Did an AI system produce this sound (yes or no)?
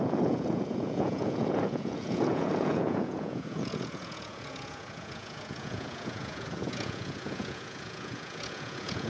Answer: yes